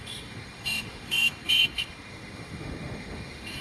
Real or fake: fake